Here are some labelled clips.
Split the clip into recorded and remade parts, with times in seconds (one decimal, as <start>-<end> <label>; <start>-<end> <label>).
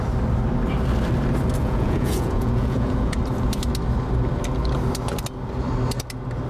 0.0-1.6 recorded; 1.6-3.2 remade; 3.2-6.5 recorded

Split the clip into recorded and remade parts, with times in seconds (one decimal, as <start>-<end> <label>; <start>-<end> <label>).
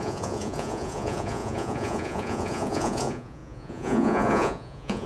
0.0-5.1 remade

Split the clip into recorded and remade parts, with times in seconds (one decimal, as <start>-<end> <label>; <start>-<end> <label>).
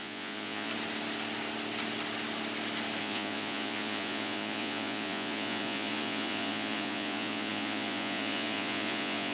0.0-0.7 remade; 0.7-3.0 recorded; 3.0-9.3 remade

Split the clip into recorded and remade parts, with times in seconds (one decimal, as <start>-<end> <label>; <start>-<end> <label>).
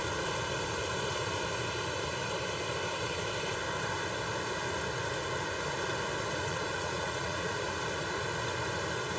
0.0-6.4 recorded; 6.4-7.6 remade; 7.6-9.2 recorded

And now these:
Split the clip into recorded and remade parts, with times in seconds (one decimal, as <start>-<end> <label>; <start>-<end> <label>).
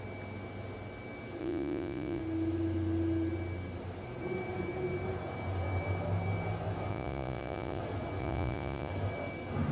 0.0-1.4 recorded; 1.4-2.2 remade; 2.2-6.9 recorded; 6.9-7.8 remade; 7.8-8.2 recorded; 8.2-8.9 remade; 8.9-9.7 recorded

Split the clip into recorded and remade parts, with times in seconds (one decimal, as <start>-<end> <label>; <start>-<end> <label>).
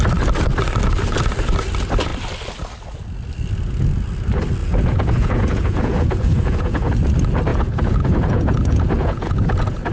0.0-4.6 recorded; 4.6-6.9 remade; 6.9-7.5 recorded; 7.5-9.9 remade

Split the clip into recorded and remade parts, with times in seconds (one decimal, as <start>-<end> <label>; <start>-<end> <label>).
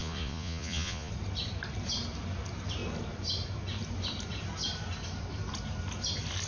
0.0-1.1 remade; 1.1-6.5 recorded